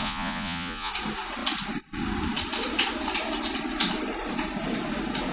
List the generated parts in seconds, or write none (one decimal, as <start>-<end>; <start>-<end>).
0.0-0.9